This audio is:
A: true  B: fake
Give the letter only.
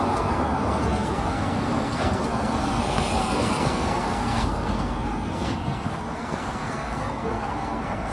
B